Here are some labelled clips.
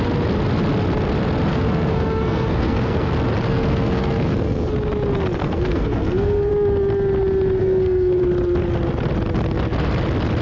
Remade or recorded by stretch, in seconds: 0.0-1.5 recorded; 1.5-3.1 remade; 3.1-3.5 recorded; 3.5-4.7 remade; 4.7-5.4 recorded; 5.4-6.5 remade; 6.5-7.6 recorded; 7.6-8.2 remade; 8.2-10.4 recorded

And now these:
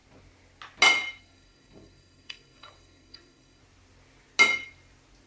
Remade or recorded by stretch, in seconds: 0.0-1.2 recorded; 1.2-3.6 remade; 3.6-5.3 recorded

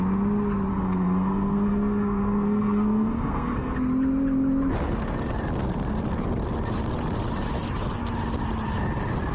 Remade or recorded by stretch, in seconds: 0.0-0.7 recorded; 0.7-3.7 remade; 3.7-9.3 recorded

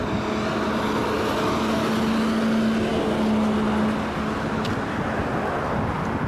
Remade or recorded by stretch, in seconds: 0.0-6.3 recorded